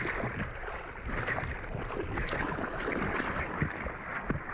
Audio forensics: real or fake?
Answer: real